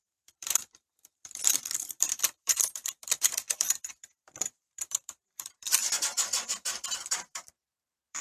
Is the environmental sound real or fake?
fake